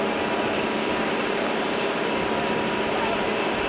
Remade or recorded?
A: recorded